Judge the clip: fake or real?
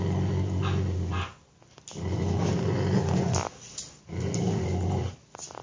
real